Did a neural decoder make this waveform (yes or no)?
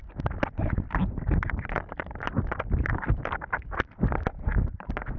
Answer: no